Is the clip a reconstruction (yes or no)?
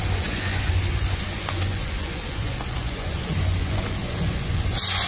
yes